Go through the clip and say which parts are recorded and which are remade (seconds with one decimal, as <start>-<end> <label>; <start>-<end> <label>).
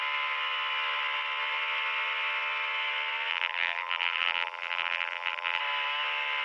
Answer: 0.0-3.3 recorded; 3.3-5.6 remade; 5.6-6.4 recorded